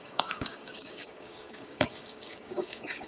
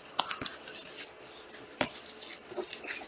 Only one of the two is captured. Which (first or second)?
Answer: second